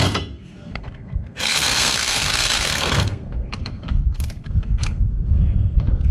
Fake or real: fake